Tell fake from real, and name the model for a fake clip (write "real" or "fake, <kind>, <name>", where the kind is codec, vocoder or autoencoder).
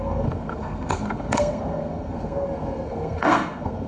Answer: fake, codec, SNAC